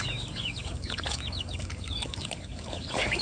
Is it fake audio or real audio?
fake